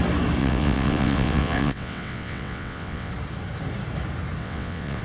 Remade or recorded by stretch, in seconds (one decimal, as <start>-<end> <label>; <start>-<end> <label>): 0.0-0.4 recorded; 0.4-3.1 remade; 3.1-4.4 recorded; 4.4-5.0 remade